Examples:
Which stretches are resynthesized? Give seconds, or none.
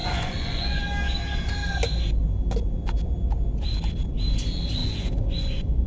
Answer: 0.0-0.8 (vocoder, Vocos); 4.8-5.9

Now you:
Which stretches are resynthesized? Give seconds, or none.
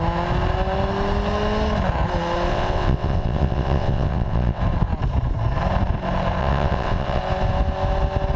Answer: 2.5-4.6 (vocoder, WaveNeXt); 6.4-7.2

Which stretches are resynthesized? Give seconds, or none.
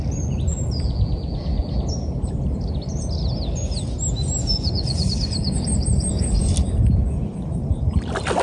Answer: 4.4-5.1 (vocoder, Vocos)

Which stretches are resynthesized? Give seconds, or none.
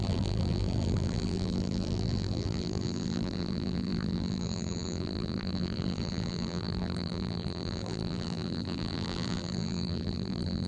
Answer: 0.0-10.7 (vocoder, BigVGAN v2)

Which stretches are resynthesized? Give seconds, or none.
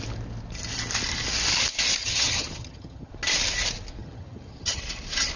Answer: 2.0-3.1 (vocoder, HiFi-GAN); 4.0-4.8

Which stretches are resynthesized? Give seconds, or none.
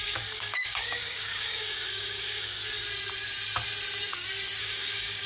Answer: 0.0-2.6 (codec, DAC); 4.6-5.3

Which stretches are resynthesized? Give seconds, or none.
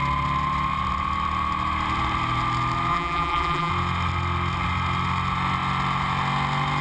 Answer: 2.9-3.7 (vocoder, BigVGAN v2)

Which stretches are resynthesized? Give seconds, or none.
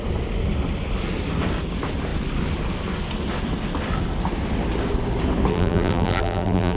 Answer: 5.5-6.8 (vocoder, BigVGAN v2)